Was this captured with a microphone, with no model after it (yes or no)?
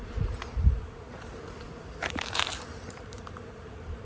no